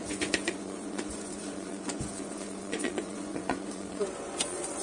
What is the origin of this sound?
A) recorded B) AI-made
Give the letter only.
B